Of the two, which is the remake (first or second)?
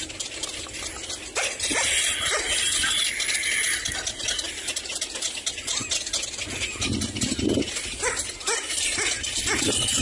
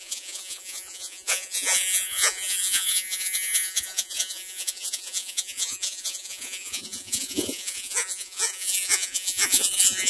second